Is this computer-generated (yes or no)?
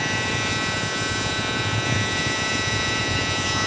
yes